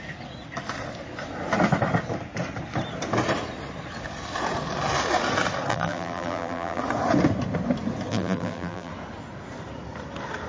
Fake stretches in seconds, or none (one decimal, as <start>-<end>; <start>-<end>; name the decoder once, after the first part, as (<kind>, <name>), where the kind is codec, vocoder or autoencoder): 5.7-6.8 (vocoder, BigVGAN v2); 8.1-8.9